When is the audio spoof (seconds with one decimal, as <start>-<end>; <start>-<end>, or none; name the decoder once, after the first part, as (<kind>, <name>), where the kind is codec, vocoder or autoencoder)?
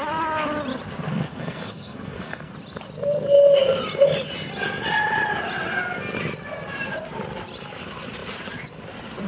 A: 1.1-2.5 (codec, SNAC)